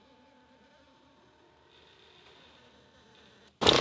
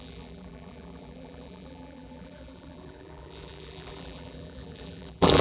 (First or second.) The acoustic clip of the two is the first